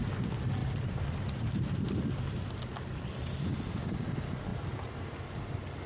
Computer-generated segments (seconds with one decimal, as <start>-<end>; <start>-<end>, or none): 0.6-4.1; 4.5-5.3